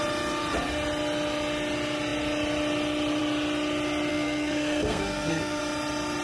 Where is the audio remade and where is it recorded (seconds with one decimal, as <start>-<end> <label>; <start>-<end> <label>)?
0.0-4.1 recorded; 4.1-5.6 remade; 5.6-6.2 recorded